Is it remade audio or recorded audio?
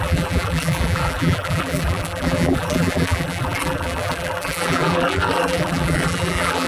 remade